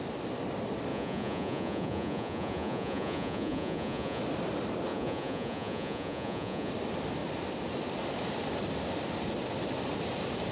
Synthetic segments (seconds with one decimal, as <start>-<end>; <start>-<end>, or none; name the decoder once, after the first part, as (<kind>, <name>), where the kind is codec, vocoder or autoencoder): 0.9-4.2 (vocoder, Vocos); 4.9-6.7